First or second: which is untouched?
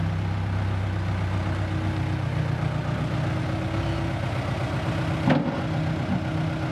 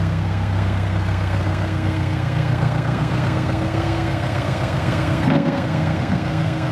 first